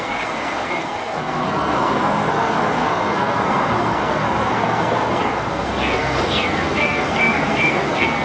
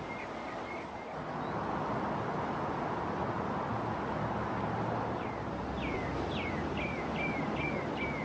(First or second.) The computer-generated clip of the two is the first